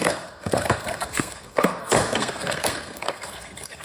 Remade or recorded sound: remade